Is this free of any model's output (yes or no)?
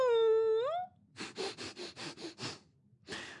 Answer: yes